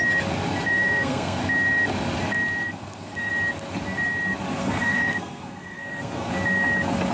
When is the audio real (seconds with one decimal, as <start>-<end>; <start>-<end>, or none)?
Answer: 0.0-0.7; 1.4-2.6; 3.3-4.6; 6.3-7.1